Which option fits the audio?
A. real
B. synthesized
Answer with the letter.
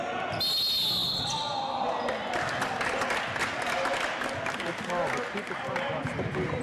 A